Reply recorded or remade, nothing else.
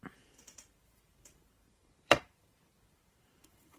remade